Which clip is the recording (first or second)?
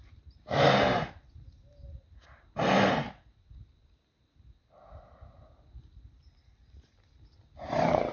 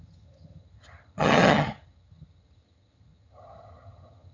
first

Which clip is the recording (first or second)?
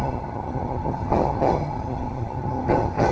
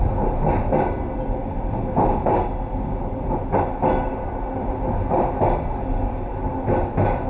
second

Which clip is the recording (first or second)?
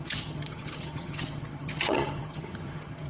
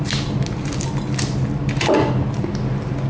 second